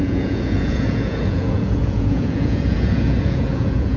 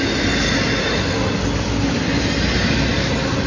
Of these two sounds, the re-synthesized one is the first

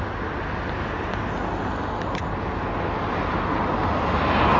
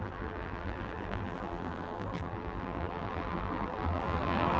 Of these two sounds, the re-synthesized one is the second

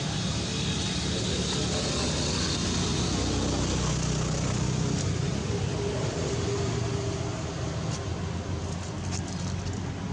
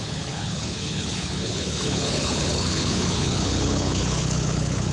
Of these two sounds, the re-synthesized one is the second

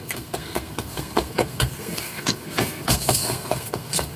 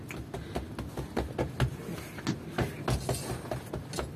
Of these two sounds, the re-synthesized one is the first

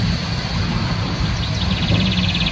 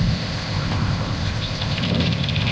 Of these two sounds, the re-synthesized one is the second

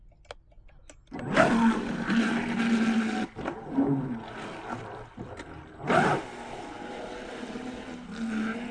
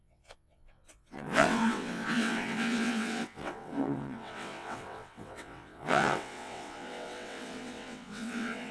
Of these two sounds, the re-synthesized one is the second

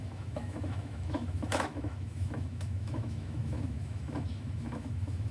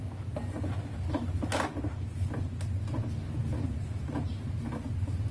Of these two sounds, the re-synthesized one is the first